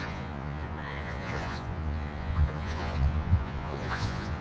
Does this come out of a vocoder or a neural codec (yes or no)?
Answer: yes